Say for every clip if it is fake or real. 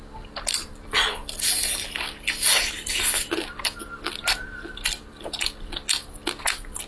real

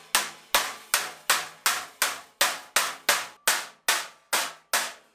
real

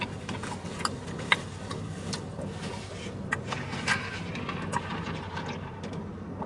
real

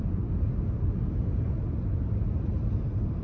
real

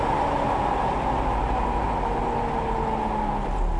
real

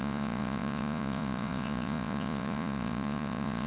fake